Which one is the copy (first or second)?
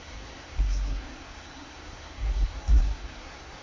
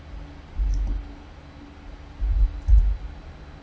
first